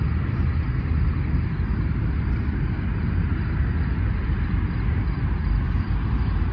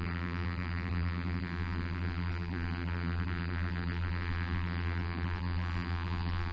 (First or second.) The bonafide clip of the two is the first